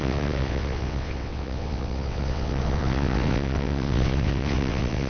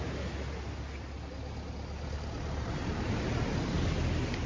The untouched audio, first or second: second